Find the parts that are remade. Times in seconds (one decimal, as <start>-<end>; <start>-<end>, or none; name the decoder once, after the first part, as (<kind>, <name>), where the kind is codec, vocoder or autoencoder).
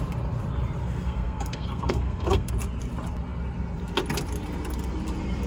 0.8-2.5 (codec, SNAC)